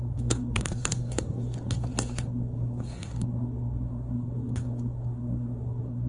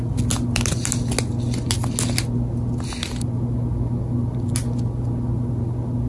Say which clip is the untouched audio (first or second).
second